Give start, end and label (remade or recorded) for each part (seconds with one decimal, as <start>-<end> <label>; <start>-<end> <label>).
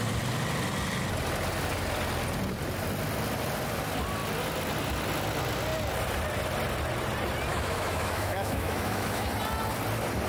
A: 0.0-7.5 recorded; 7.5-9.3 remade; 9.3-10.3 recorded